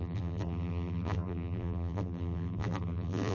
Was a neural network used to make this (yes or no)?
yes